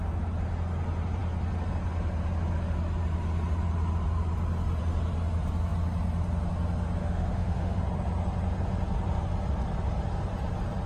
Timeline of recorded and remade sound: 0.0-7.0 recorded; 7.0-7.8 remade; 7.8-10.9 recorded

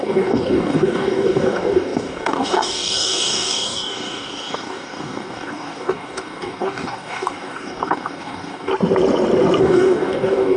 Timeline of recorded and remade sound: 0.0-8.7 remade; 8.7-9.6 recorded; 9.6-10.6 remade

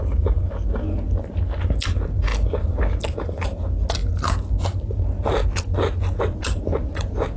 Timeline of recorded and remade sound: 0.0-7.4 recorded

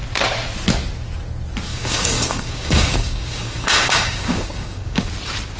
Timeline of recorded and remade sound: 0.0-1.7 recorded; 1.7-5.1 remade; 5.1-5.6 recorded

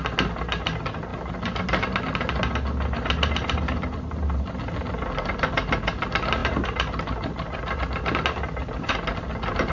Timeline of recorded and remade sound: 0.0-9.7 recorded

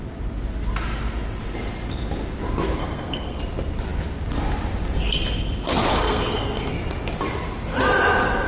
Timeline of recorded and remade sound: 0.0-2.8 recorded; 2.8-3.4 remade; 3.4-5.9 recorded; 5.9-6.7 remade; 6.7-8.5 recorded

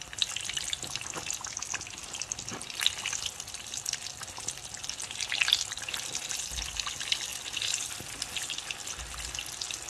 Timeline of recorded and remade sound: 0.0-9.9 recorded